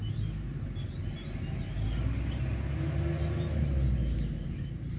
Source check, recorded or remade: recorded